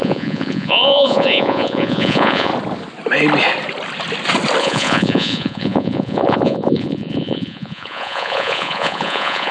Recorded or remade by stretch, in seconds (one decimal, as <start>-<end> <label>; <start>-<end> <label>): 0.0-2.5 remade; 2.5-4.6 recorded; 4.6-9.5 remade